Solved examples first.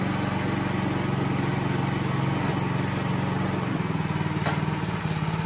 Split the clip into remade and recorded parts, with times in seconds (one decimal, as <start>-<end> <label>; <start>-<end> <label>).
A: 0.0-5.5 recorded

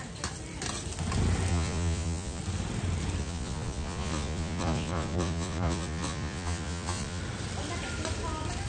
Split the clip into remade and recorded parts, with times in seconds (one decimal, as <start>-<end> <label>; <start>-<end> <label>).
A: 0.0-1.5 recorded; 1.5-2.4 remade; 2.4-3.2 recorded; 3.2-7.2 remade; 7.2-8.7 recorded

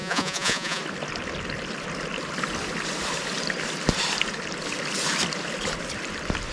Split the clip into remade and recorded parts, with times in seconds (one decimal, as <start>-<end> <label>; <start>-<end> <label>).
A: 0.0-0.8 remade; 0.8-6.5 recorded

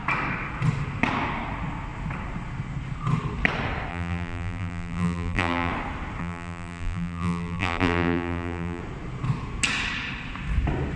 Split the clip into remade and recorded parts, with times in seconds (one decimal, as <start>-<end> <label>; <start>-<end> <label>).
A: 0.0-3.9 recorded; 3.9-5.7 remade; 5.7-6.2 recorded; 6.2-8.8 remade; 8.8-11.0 recorded

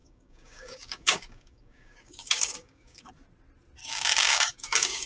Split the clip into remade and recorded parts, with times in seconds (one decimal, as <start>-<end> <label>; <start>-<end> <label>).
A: 0.0-3.1 remade; 3.1-3.8 recorded; 3.8-5.1 remade